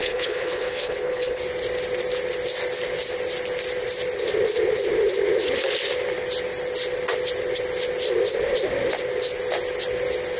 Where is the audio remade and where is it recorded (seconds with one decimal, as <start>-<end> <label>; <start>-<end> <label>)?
0.0-1.4 remade; 1.4-10.4 recorded